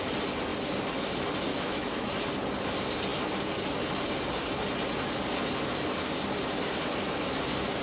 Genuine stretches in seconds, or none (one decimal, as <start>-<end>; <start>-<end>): 0.0-1.5; 2.2-7.8

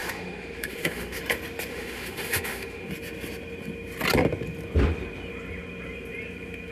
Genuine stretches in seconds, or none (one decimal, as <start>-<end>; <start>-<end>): 1.2-1.7; 2.9-6.7

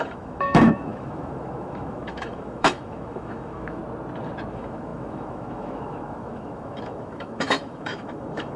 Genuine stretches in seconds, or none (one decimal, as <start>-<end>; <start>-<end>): 3.8-4.5

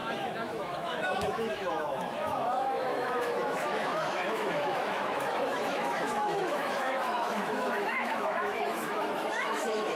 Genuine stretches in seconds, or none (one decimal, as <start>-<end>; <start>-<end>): none

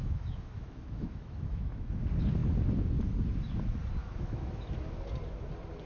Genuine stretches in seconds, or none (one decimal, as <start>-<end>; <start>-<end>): 1.9-4.0; 4.6-5.9

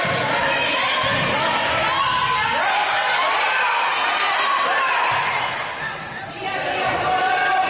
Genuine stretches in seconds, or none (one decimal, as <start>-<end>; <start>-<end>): 0.0-7.7